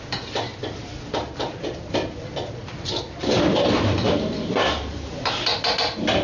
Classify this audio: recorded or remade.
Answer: remade